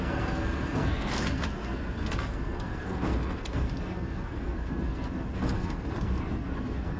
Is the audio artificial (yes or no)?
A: yes